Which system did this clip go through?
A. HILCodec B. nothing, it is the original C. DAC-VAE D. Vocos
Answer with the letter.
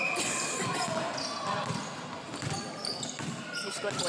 B